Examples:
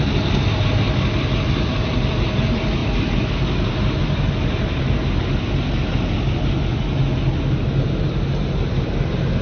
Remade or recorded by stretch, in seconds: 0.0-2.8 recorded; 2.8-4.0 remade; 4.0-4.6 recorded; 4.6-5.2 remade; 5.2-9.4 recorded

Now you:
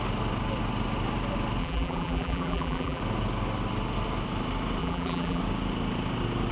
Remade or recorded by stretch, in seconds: 0.0-1.6 recorded; 1.6-3.0 remade; 3.0-4.8 recorded; 4.8-5.4 remade; 5.4-6.5 recorded